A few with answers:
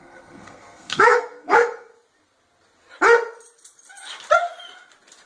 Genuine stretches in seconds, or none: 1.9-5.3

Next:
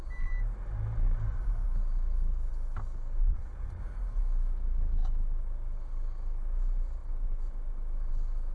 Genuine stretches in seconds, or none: 0.0-3.2; 3.8-8.5

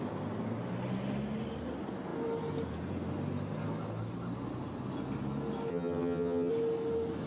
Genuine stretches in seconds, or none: 0.0-5.7; 6.5-7.3

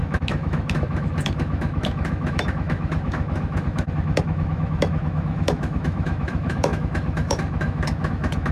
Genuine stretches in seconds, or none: none